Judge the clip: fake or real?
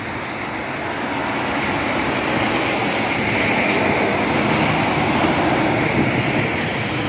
real